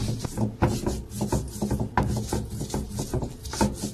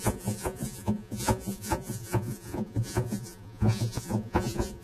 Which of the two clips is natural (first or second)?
first